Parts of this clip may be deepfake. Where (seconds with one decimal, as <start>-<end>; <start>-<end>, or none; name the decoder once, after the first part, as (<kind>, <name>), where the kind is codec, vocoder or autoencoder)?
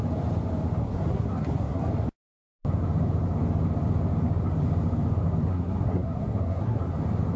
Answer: 0.8-1.8 (codec, SNAC); 5.5-6.9